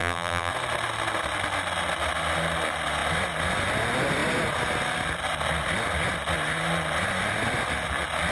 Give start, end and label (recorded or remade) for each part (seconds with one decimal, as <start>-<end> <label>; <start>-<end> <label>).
0.0-0.5 remade; 0.5-8.3 recorded